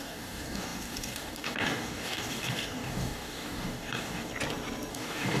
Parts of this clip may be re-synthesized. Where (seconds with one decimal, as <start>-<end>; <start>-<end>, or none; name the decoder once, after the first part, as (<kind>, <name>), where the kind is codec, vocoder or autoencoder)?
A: 0.0-4.3 (codec, DAC); 4.9-5.4